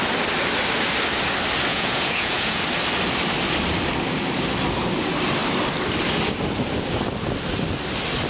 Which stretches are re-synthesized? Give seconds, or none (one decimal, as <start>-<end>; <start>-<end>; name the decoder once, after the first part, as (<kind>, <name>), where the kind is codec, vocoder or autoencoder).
1.7-2.6 (vocoder, Vocos)